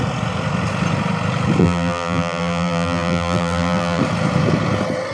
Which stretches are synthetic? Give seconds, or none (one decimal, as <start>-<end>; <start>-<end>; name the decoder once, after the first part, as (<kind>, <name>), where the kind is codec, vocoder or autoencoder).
1.6-4.0 (vocoder, BigVGAN v2)